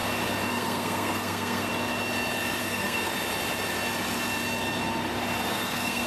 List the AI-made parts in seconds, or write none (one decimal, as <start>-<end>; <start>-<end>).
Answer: 0.5-1.7; 2.6-3.1; 5.5-6.1